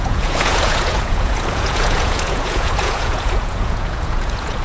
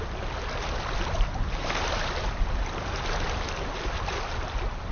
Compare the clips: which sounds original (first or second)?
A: second